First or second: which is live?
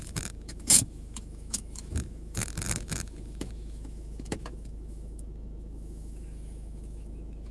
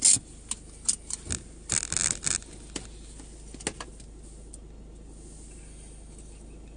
second